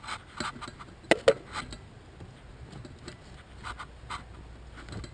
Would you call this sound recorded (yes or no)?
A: yes